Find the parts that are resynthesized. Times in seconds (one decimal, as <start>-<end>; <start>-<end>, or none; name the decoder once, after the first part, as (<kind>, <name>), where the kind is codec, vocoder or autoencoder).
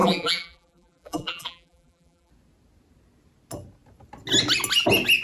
0.0-2.3 (vocoder, BigVGAN v2)